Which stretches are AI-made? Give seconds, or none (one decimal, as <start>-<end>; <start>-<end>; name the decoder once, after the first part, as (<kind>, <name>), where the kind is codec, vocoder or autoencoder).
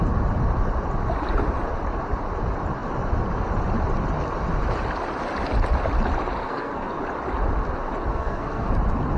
6.4-7.0 (codec, SNAC); 8.1-8.7